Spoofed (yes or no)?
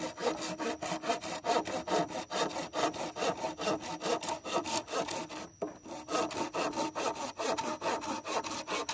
no